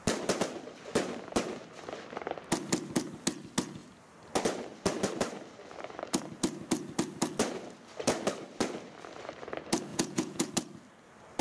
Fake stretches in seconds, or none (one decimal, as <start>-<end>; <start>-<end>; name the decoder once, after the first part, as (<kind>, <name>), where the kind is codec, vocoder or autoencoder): 9.9-10.5 (vocoder, Vocos)